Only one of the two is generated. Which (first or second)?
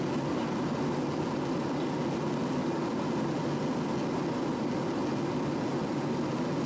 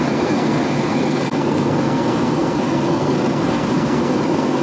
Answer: second